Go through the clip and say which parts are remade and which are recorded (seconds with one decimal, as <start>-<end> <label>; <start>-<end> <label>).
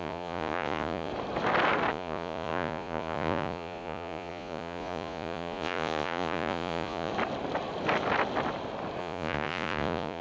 0.0-1.1 remade; 1.1-1.9 recorded; 1.9-7.1 remade; 7.1-9.0 recorded; 9.0-10.2 remade